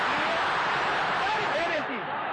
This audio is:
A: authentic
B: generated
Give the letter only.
B